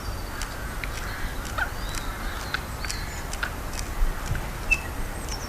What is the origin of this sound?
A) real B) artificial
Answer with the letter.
A